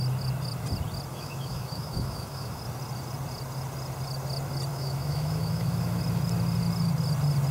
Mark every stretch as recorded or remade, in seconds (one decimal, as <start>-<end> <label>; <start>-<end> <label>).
0.0-1.1 recorded; 1.1-2.6 remade; 2.6-4.7 recorded; 4.7-6.0 remade; 6.0-7.5 recorded